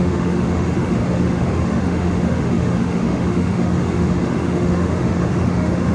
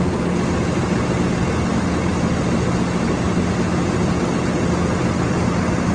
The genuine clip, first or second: second